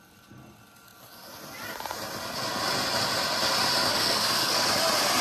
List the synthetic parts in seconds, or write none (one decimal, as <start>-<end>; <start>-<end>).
3.9-4.7